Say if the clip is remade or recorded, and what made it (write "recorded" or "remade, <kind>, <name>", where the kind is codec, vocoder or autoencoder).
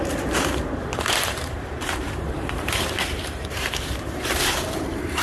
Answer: remade, vocoder, BigVGAN v2